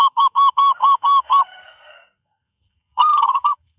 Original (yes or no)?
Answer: no